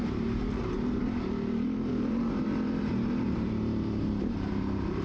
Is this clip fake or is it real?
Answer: fake